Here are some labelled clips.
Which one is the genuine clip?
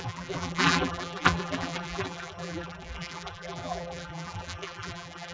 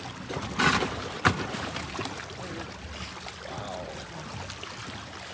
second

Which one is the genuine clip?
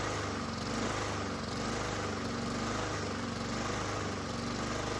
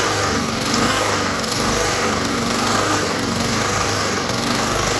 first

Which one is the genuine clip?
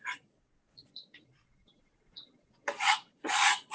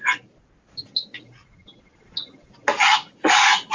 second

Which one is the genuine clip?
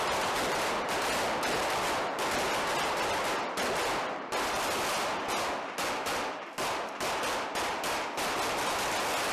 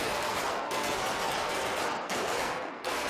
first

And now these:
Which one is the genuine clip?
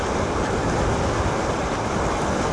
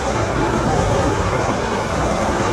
first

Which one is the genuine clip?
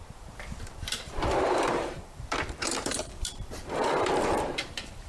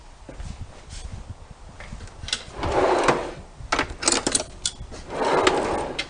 second